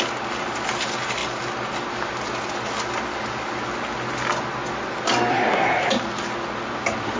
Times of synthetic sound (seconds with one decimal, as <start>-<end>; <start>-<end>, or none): 5.3-5.9